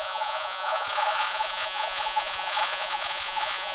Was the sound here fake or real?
fake